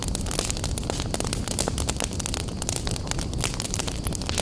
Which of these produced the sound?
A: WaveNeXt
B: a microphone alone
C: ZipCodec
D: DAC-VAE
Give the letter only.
B